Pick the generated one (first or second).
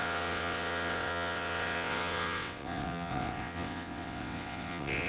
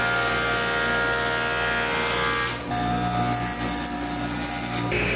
first